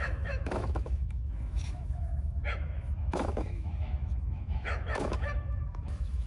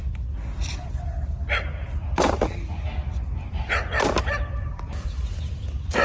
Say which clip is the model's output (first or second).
first